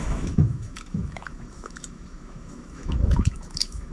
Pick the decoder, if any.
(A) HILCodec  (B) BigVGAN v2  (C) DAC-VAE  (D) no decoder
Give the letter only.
C